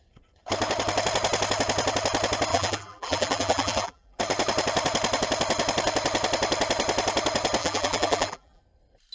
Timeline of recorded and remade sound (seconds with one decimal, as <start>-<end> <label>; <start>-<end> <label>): 0.0-2.5 recorded; 2.5-4.2 remade; 4.2-7.6 recorded; 7.6-8.6 remade; 8.6-9.1 recorded